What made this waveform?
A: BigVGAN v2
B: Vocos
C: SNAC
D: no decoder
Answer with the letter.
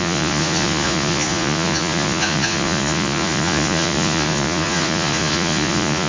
B